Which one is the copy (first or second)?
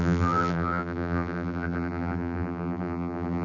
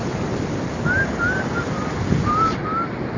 first